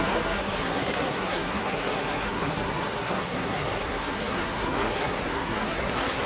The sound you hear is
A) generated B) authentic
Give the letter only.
A